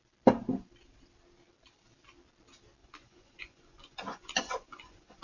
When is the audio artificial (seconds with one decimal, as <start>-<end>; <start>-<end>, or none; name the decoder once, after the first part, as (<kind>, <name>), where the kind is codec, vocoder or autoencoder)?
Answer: 2.8-5.2 (vocoder, Vocos)